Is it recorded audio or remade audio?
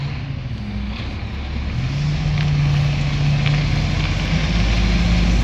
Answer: recorded